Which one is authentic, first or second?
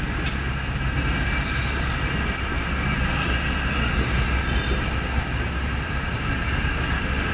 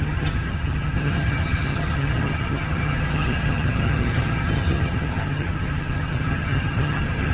first